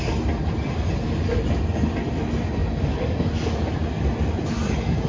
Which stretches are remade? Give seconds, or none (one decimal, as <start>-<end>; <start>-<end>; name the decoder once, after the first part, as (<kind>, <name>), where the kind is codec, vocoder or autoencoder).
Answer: none